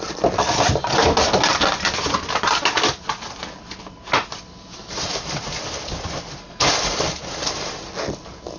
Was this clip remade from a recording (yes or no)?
no